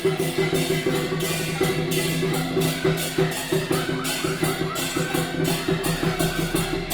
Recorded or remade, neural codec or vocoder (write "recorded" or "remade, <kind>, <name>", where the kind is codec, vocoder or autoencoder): recorded